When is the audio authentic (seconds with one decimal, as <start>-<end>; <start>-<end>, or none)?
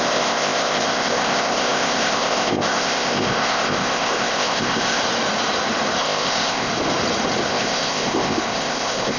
5.0-6.0; 6.7-7.5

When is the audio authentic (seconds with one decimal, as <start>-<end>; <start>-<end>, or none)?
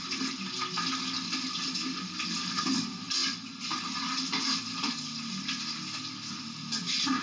0.0-7.2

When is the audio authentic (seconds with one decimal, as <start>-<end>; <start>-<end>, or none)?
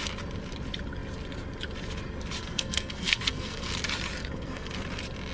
0.0-2.4; 3.7-4.2; 4.7-5.3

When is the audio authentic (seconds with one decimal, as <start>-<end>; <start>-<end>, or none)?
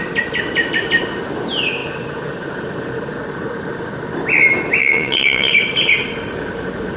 0.0-4.8; 5.5-7.0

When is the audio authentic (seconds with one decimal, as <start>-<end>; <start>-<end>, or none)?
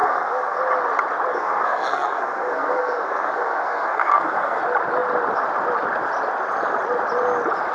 0.6-1.3; 4.6-7.7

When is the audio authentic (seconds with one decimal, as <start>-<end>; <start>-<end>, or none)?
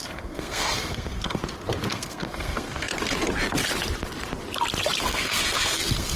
1.4-1.9; 2.9-5.0